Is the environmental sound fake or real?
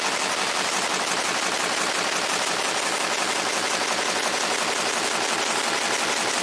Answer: real